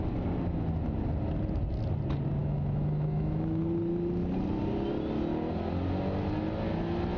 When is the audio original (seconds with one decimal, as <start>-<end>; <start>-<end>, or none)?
0.0-2.4; 3.6-7.2